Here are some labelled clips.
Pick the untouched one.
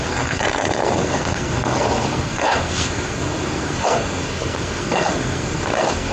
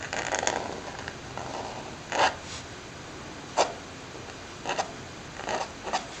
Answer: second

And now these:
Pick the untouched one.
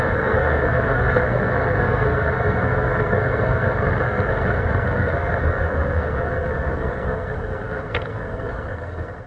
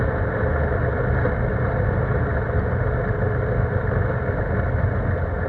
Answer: second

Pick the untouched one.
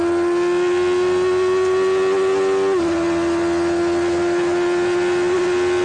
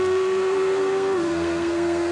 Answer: first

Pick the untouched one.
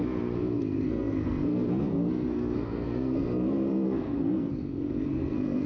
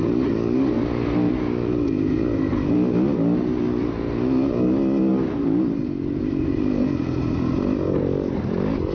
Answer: second